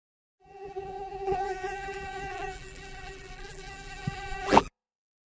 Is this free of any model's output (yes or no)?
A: no